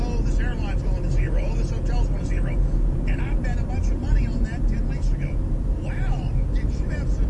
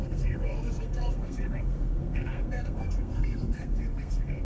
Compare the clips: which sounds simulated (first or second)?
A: second